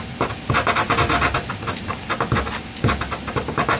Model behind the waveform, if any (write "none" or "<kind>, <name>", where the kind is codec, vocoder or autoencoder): none